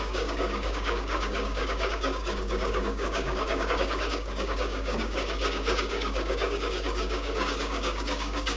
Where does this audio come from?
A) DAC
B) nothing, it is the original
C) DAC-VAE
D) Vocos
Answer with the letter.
A